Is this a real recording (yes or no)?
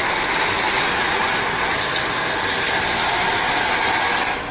yes